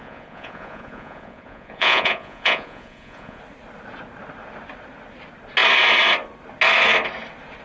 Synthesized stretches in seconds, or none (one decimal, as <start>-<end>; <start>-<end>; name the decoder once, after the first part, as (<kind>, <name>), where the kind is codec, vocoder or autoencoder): 0.0-3.4 (vocoder, Vocos)

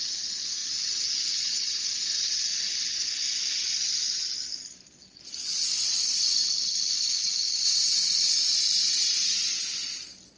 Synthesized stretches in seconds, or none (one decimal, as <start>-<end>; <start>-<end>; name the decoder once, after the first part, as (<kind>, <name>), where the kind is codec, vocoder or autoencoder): none